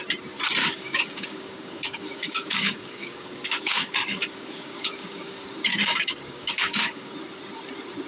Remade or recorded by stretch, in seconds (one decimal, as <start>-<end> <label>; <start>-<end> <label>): 0.0-0.6 recorded; 0.6-5.3 remade; 5.3-5.7 recorded; 5.7-7.1 remade; 7.1-8.1 recorded